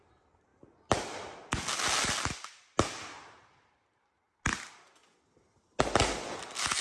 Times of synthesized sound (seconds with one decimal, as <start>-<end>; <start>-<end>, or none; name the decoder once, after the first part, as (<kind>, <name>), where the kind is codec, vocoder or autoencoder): none